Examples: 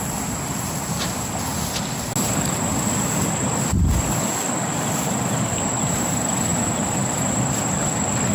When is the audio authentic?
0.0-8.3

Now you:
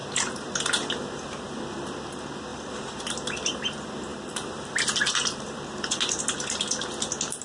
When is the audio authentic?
0.0-2.5; 3.0-4.1; 6.2-7.4

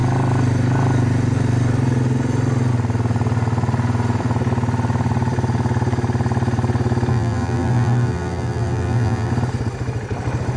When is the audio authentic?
0.0-7.1; 9.3-10.6